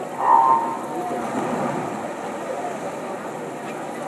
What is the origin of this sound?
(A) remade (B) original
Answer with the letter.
B